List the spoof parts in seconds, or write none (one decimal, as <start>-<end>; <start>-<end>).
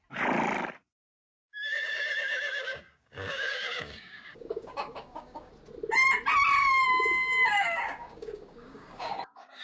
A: 1.2-5.5; 6.6-9.6